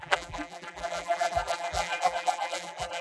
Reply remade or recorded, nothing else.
remade